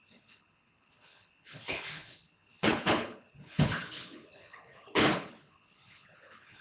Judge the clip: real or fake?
fake